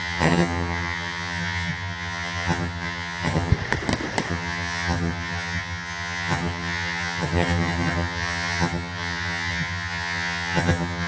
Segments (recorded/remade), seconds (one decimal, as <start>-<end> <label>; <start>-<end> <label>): 0.0-3.5 remade; 3.5-4.3 recorded; 4.3-11.1 remade